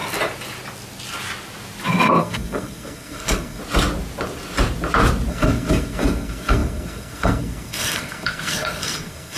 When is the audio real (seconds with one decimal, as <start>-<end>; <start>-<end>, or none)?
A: 0.0-2.2; 3.6-5.3